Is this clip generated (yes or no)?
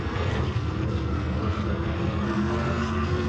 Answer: yes